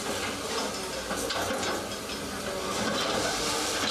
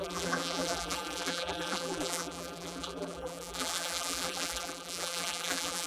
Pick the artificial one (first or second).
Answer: second